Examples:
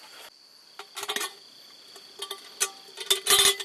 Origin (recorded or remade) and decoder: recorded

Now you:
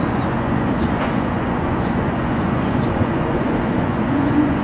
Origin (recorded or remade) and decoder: remade, vocoder, Vocos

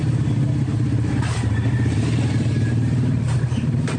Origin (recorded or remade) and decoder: remade, vocoder, BigVGAN v2